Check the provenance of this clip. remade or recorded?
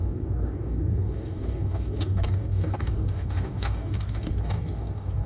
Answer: remade